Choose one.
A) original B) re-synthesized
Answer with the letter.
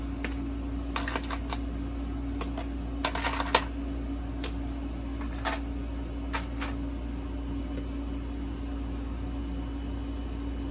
A